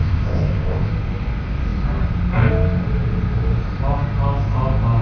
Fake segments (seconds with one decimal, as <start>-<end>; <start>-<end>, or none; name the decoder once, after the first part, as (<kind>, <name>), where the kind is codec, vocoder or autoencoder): 0.0-0.9 (codec, ZipCodec)